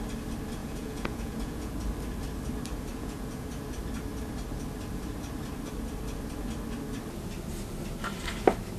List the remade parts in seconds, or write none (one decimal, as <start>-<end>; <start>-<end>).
0.6-1.7; 2.9-3.5